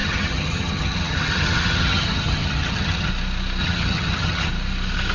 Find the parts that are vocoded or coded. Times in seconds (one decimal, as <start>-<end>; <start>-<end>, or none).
0.0-3.1; 3.6-4.5